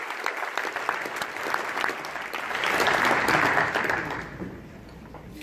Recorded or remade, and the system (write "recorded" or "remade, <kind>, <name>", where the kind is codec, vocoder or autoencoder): recorded